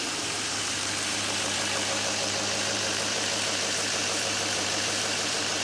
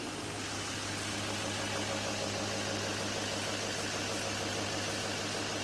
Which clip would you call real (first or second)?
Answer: second